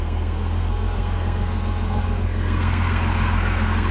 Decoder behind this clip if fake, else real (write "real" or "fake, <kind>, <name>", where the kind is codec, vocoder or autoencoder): fake, codec, SNAC